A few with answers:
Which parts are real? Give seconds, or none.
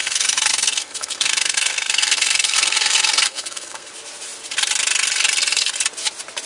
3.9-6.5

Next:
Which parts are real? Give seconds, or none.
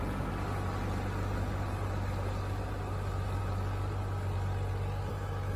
0.0-5.6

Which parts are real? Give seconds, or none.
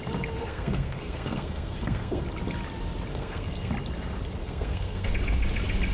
0.0-0.4; 2.2-3.1; 3.7-4.4; 5.1-5.9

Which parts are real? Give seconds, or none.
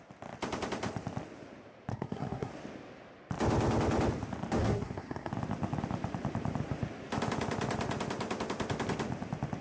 0.0-1.9; 2.5-4.6; 5.3-9.6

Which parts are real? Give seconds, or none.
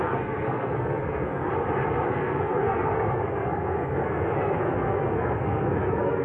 1.5-2.1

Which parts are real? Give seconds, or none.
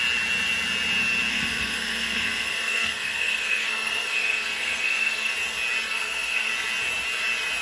0.0-1.3; 5.3-5.9; 6.5-7.6